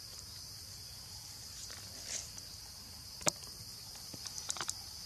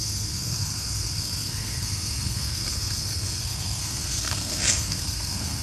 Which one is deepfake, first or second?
second